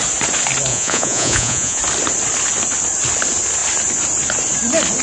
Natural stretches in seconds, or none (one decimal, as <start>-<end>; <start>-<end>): 0.0-0.7; 1.8-5.0